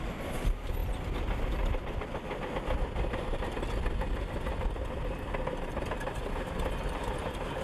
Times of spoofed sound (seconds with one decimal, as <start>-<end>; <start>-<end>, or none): none